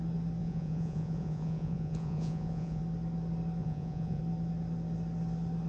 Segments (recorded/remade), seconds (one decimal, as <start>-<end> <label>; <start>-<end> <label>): 0.0-0.4 recorded; 0.4-2.8 remade; 2.8-3.6 recorded; 3.6-4.2 remade; 4.2-5.7 recorded